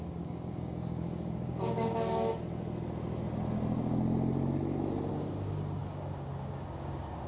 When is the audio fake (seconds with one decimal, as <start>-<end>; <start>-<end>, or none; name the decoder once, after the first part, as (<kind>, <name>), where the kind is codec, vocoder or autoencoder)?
0.0-2.3 (codec, DAC); 5.1-7.3